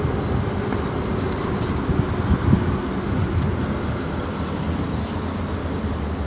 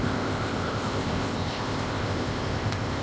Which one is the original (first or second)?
first